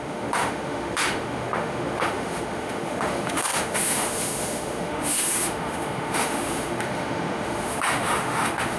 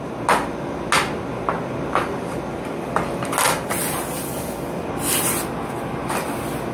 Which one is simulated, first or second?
first